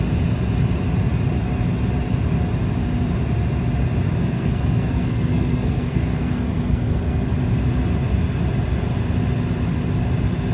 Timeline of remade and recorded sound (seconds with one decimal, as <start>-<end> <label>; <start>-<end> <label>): 0.0-4.2 recorded; 4.2-7.3 remade; 7.3-10.5 recorded